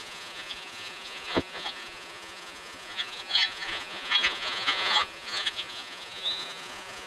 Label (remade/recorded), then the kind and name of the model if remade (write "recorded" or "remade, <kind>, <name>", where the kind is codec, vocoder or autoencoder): remade, vocoder, Vocos